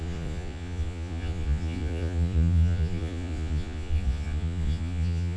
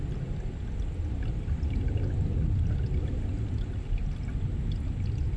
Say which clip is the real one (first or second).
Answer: second